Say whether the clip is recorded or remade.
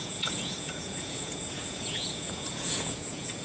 remade